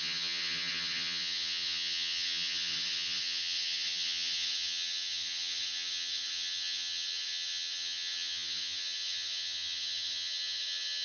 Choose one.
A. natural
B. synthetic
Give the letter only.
B